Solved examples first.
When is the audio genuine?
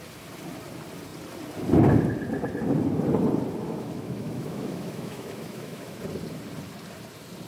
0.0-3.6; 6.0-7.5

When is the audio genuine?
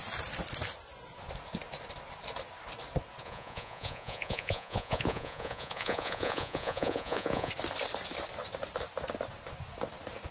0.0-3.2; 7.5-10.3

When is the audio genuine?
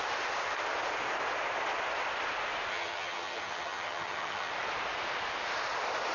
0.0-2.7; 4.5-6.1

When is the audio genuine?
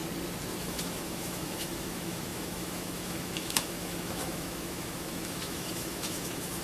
0.0-0.6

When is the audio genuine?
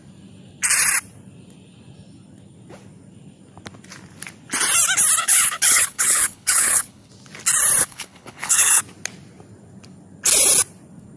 0.0-5.2; 7.1-7.8; 8.8-11.2